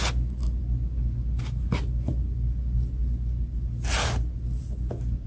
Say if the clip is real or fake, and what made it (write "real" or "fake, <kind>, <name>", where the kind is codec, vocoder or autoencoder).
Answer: real